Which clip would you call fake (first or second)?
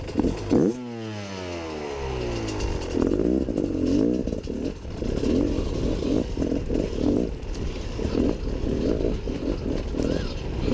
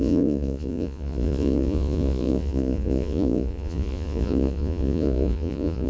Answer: second